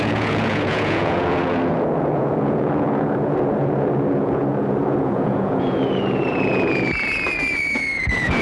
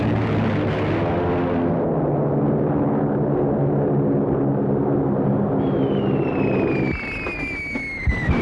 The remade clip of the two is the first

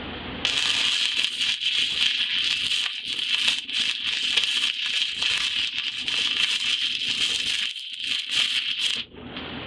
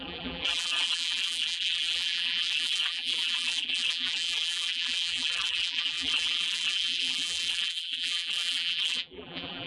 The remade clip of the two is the second